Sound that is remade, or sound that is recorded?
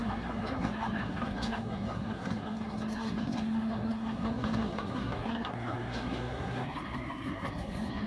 remade